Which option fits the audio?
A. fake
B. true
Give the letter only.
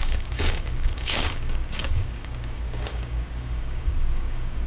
A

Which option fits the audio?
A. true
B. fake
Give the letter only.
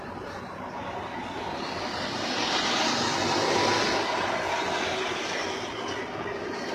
A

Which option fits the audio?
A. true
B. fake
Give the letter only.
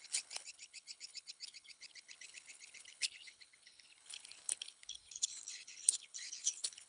B